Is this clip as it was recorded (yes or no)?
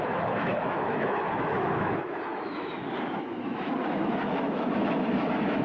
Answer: no